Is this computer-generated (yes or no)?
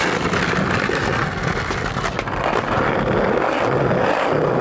no